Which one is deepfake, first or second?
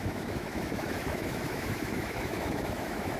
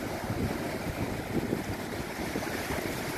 first